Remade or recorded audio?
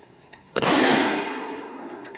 remade